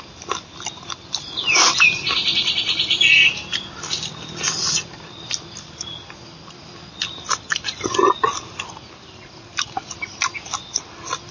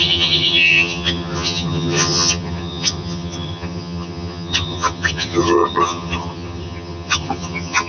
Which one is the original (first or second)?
first